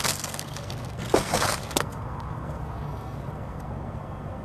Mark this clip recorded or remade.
remade